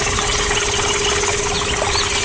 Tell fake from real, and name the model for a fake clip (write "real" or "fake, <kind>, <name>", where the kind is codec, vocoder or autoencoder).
real